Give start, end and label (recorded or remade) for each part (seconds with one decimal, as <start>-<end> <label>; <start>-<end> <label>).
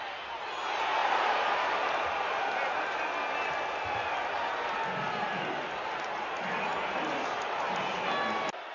0.0-1.0 recorded; 1.0-2.3 remade; 2.3-8.7 recorded